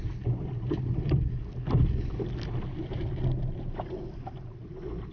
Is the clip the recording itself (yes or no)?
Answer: yes